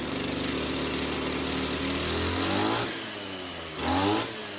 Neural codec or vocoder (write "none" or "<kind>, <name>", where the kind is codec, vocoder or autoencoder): none